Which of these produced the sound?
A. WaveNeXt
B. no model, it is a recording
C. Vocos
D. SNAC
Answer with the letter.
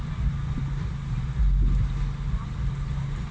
B